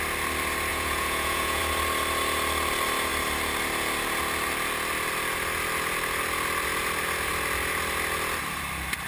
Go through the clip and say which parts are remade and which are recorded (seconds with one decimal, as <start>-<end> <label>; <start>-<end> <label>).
0.0-0.7 recorded; 0.7-1.6 remade; 1.6-9.1 recorded